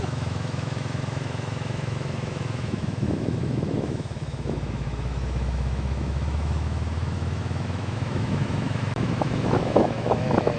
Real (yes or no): no